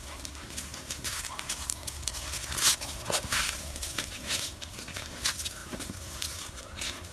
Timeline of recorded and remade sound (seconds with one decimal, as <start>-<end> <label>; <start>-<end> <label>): 0.0-7.1 remade